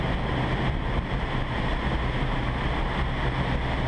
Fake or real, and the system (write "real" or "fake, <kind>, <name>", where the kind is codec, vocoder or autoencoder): real